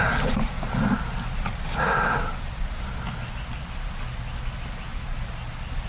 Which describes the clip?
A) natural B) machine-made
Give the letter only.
A